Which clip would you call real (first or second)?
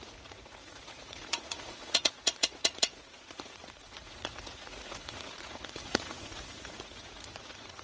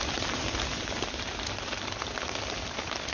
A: second